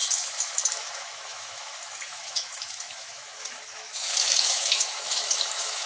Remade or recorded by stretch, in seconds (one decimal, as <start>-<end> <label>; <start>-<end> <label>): 0.0-5.9 remade